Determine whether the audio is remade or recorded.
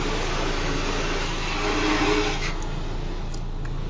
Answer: recorded